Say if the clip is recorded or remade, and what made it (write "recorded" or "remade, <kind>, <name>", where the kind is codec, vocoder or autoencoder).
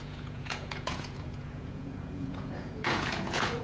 remade, vocoder, Vocos